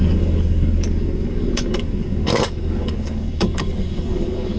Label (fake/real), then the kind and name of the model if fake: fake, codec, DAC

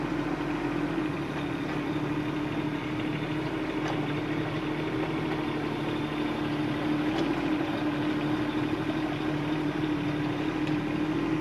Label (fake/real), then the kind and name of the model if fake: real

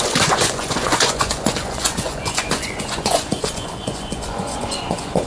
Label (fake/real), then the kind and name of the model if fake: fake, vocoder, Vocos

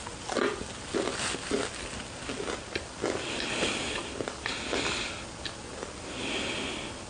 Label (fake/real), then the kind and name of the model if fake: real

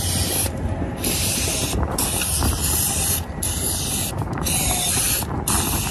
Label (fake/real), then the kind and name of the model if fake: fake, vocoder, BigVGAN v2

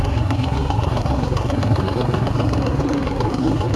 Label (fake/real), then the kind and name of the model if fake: fake, codec, SNAC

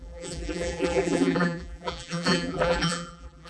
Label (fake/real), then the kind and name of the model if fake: fake, vocoder, BigVGAN v2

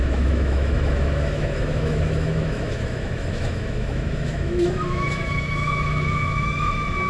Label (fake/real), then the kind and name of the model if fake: fake, autoencoder, DAC-VAE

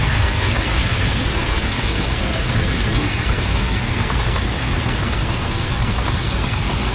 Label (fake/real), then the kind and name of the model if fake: fake, codec, SNAC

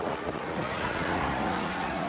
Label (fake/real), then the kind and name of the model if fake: fake, vocoder, Vocos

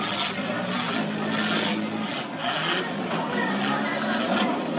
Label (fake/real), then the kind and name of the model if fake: real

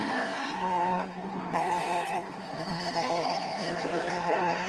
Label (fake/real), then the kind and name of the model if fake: fake, codec, SNAC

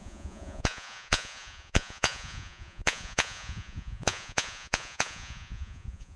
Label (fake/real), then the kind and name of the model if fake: fake, vocoder, Vocos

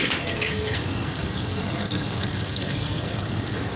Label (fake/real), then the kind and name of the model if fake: fake, codec, SNAC